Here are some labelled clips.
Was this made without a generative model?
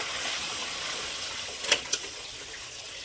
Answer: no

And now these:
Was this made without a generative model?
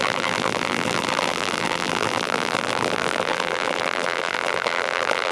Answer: no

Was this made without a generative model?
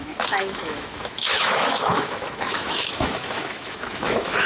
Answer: no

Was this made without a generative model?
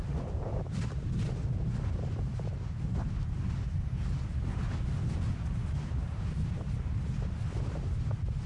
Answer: yes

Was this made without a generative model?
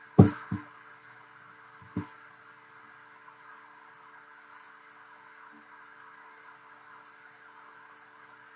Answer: yes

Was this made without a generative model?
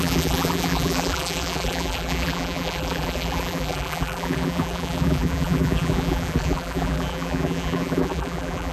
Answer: no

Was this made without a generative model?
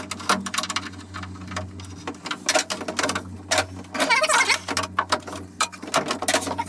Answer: yes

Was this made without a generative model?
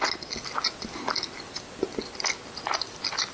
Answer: yes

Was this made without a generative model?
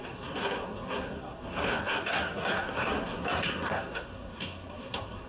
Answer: no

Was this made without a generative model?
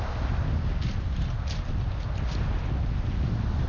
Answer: yes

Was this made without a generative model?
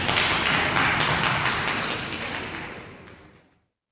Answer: yes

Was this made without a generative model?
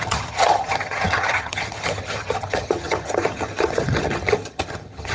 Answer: no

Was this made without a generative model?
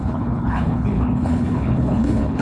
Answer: no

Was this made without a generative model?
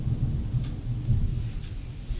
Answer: yes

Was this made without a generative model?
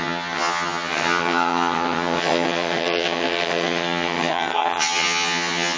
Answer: no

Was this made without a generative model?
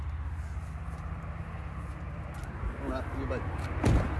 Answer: yes